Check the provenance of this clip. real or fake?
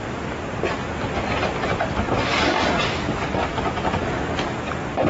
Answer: real